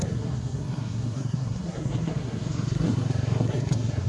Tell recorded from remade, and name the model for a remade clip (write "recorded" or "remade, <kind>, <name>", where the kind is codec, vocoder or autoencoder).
remade, codec, SNAC